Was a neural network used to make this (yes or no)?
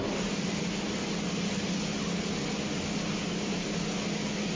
no